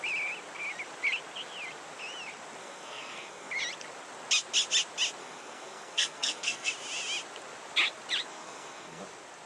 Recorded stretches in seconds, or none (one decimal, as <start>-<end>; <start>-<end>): 0.0-2.6; 3.5-5.2; 6.7-8.3; 9.0-9.5